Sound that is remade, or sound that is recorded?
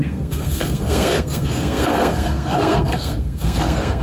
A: remade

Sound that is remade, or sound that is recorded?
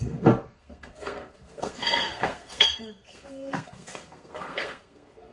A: remade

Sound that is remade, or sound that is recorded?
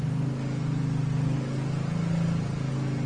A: recorded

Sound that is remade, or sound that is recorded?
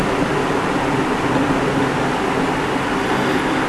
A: recorded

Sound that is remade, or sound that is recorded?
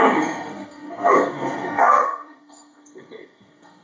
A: remade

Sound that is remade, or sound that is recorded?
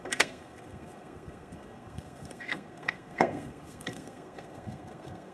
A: remade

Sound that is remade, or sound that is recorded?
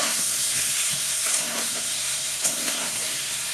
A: remade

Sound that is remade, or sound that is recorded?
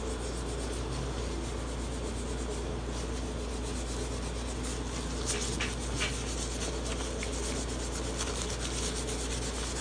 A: recorded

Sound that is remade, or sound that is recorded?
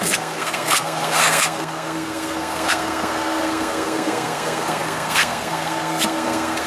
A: remade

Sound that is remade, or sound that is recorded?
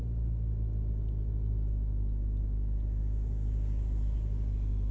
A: recorded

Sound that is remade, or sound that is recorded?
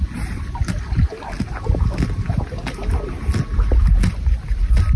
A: recorded